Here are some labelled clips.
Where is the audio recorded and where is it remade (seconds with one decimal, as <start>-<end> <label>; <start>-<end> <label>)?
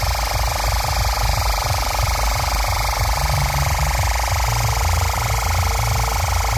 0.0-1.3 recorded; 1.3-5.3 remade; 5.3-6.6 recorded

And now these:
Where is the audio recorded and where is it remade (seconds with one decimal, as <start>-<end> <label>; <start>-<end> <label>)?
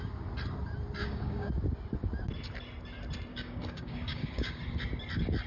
0.0-1.0 recorded; 1.0-1.5 remade; 1.5-3.3 recorded; 3.3-4.6 remade; 4.6-5.5 recorded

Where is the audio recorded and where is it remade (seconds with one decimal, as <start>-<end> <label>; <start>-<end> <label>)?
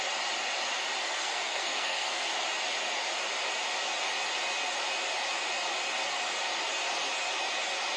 0.0-1.0 recorded; 1.0-2.3 remade; 2.3-8.0 recorded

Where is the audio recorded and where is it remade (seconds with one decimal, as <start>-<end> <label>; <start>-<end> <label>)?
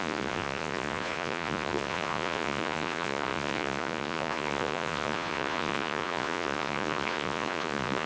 0.0-8.1 remade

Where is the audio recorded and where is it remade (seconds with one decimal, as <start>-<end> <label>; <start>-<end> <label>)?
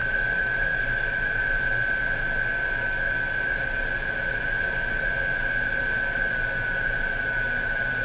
0.0-1.4 remade; 1.4-8.0 recorded